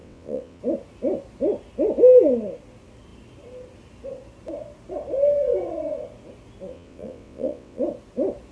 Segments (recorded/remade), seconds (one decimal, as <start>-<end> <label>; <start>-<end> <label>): 0.0-0.6 remade; 0.6-6.7 recorded; 6.7-7.8 remade; 7.8-8.5 recorded